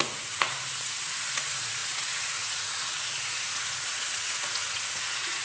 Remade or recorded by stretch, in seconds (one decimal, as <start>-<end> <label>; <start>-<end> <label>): 0.0-5.4 remade